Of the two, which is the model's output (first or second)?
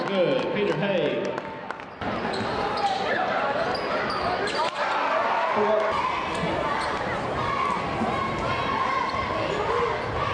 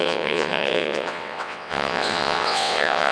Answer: second